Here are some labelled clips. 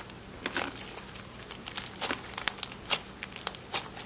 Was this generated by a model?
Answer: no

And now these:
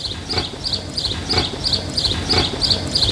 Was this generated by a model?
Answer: no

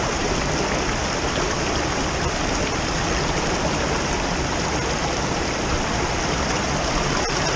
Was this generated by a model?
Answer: no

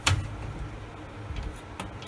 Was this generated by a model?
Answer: no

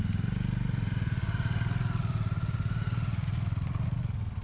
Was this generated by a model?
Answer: no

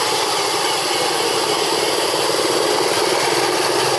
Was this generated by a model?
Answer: no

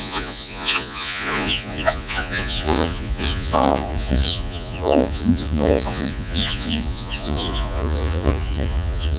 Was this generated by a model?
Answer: yes